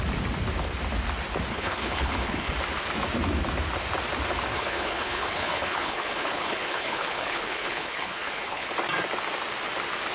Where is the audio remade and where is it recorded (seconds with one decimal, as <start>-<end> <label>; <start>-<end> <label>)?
0.0-1.5 recorded; 1.5-2.5 remade; 2.5-4.5 recorded; 4.5-8.7 remade; 8.7-10.1 recorded